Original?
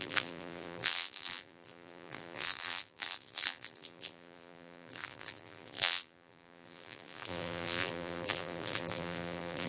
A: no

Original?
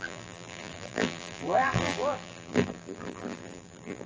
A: no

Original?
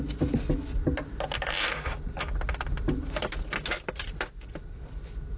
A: yes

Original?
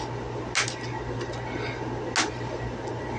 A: yes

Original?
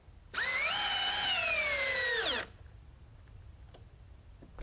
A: yes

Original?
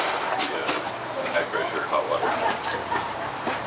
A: no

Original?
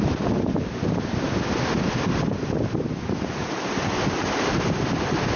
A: no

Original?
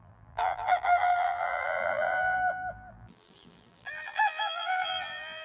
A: no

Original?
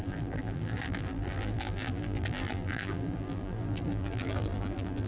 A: no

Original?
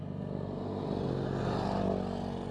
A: yes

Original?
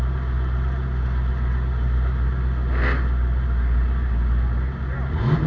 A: yes